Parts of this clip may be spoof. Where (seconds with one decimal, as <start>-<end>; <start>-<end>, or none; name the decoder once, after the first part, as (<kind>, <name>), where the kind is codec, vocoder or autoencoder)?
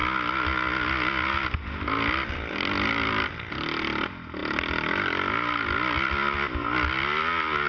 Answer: none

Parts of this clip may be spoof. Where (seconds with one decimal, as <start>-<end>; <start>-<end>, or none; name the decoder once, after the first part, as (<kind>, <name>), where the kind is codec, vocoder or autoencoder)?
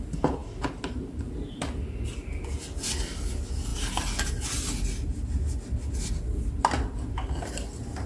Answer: none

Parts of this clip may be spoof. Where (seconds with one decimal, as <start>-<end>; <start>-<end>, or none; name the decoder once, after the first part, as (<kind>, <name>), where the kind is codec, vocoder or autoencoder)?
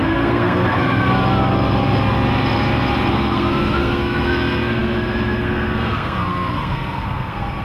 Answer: 0.0-1.0 (codec, SNAC); 3.1-7.6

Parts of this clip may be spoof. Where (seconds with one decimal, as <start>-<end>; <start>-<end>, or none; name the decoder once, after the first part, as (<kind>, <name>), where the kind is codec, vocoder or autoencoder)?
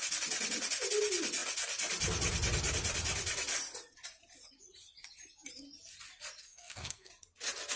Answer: 6.4-7.1 (codec, SNAC)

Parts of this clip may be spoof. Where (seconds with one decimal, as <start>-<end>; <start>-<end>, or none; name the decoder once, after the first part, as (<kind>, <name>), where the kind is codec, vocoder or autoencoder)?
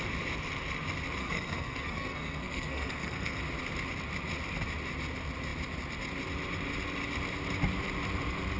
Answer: 1.2-3.4 (codec, SNAC)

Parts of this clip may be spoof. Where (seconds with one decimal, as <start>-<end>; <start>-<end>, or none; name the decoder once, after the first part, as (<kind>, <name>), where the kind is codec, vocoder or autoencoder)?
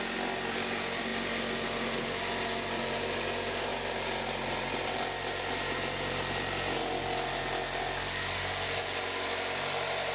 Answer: none